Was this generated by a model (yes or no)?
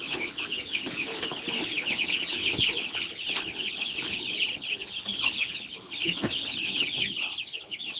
yes